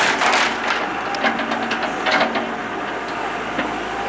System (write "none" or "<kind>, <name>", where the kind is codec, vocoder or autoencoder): none